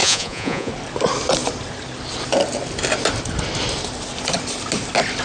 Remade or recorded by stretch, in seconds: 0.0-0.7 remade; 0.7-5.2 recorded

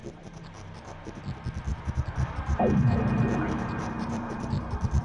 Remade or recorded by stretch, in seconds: 0.0-1.2 remade; 1.2-1.7 recorded; 1.7-5.0 remade

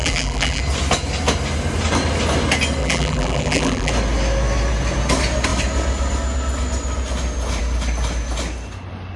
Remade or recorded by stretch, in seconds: 0.0-0.6 remade; 0.6-2.8 recorded; 2.8-3.9 remade; 3.9-9.2 recorded

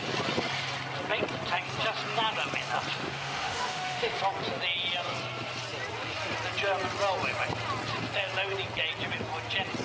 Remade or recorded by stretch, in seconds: 0.0-3.0 recorded; 3.0-4.2 remade; 4.2-9.8 recorded

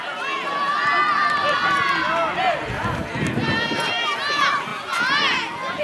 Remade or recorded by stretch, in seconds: 0.0-5.8 recorded

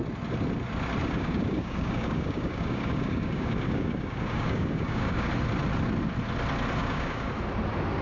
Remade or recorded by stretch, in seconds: 0.0-1.0 recorded; 1.0-5.3 remade; 5.3-6.8 recorded; 6.8-7.3 remade; 7.3-8.0 recorded

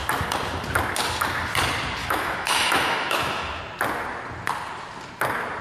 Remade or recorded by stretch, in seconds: 0.0-2.0 recorded; 2.0-3.6 remade; 3.6-5.6 recorded

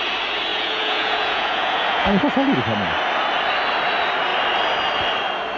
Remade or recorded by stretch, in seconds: 0.0-0.5 recorded; 0.5-2.2 remade; 2.2-5.6 recorded